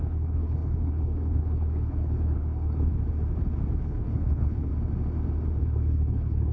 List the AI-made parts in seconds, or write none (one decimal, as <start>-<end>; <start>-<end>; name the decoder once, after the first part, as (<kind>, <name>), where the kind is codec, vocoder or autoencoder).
0.0-2.9 (codec, HILCodec); 3.8-4.7; 5.6-6.5